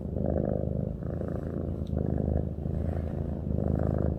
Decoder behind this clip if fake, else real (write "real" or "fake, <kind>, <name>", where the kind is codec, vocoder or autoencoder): real